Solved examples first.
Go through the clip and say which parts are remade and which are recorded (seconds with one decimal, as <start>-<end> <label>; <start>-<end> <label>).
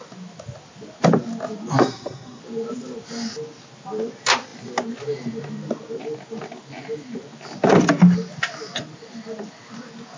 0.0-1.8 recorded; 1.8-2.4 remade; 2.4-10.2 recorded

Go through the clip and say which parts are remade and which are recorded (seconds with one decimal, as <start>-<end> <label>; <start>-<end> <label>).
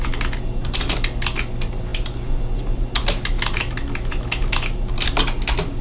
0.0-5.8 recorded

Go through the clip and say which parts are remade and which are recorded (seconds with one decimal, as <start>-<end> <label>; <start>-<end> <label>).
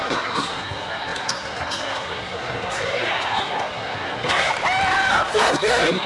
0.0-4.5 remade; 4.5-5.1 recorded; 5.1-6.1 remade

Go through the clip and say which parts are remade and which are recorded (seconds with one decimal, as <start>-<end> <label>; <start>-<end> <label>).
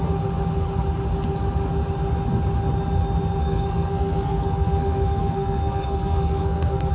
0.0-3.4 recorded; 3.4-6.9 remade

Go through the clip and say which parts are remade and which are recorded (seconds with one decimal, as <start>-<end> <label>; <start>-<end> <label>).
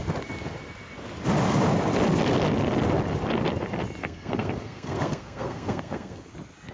0.0-4.0 recorded; 4.0-6.3 remade; 6.3-6.7 recorded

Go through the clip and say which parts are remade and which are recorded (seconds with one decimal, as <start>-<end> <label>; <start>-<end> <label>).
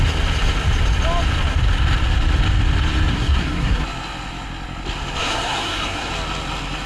0.0-3.1 recorded; 3.1-3.8 remade; 3.8-5.2 recorded; 5.2-6.1 remade; 6.1-6.9 recorded